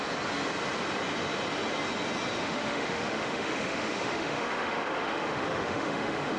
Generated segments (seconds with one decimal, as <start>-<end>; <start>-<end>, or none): 2.4-6.4

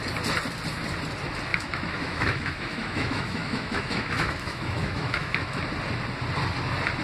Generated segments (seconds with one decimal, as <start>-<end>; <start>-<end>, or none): 1.5-5.6

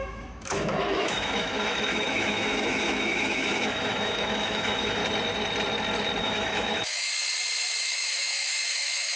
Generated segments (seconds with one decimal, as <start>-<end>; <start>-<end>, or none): 0.0-5.0; 6.2-7.1; 7.8-9.2

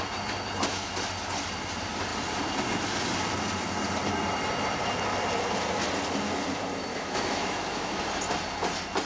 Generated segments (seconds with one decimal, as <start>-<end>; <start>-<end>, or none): 6.9-8.0

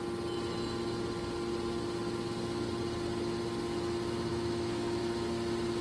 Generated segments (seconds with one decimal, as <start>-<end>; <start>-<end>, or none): 4.3-5.0

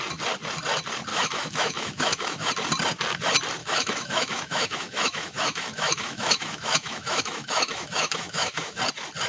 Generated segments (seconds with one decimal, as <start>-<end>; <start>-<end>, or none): 1.1-2.5; 3.6-8.8

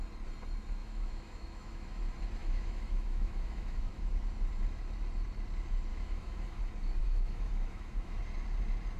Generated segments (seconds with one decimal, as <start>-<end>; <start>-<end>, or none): 0.8-2.0; 2.4-4.1; 5.9-6.6; 7.0-8.2

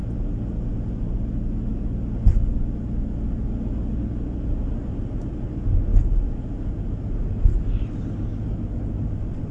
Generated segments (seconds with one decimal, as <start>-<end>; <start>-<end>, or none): none